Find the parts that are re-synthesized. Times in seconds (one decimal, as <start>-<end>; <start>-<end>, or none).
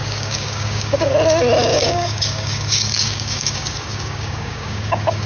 0.0-1.1; 1.7-5.3